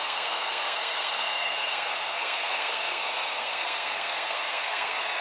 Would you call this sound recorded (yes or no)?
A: no